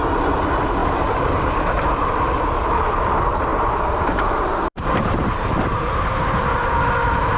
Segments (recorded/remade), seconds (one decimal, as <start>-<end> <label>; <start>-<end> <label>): 0.0-0.8 recorded; 0.8-1.9 remade; 1.9-3.5 recorded; 3.5-6.0 remade; 6.0-7.4 recorded